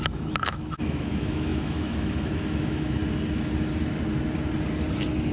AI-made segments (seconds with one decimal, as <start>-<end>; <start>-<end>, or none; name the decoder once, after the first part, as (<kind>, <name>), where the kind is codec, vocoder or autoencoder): 0.0-3.0 (autoencoder, DAC-VAE)